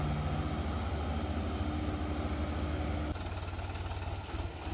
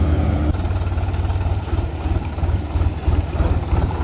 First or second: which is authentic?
first